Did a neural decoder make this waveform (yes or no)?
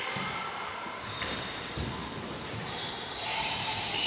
yes